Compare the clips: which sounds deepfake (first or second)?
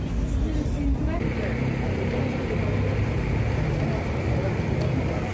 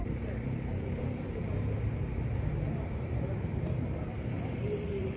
second